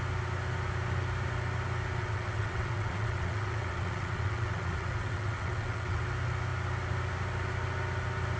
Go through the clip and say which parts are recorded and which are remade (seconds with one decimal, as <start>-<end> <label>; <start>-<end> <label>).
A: 0.0-2.0 recorded; 2.0-6.0 remade; 6.0-8.4 recorded